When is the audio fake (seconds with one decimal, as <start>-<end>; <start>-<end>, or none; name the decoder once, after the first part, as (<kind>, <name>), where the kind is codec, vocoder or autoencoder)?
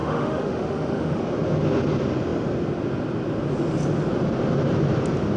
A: 0.0-1.2 (autoencoder, DAC-VAE)